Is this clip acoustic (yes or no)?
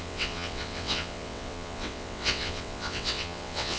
no